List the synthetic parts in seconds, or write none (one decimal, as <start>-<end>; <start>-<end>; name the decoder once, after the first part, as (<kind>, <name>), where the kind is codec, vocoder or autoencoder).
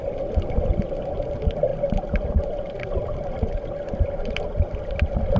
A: none